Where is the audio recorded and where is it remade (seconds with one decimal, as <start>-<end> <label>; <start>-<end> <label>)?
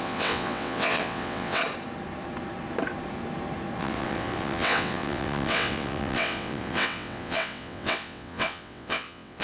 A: 0.0-1.6 remade; 1.6-3.8 recorded; 3.8-9.4 remade